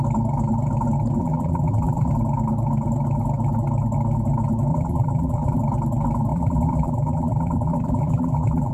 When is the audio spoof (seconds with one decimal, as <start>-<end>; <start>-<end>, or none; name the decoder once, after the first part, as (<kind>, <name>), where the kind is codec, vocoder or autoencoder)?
1.2-2.1 (vocoder, BigVGAN v2); 4.7-5.6; 6.3-8.7